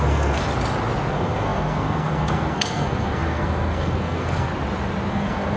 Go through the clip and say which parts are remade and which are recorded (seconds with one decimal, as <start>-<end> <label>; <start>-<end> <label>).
0.0-0.5 remade; 0.5-1.1 recorded; 1.1-4.5 remade; 4.5-5.1 recorded; 5.1-5.6 remade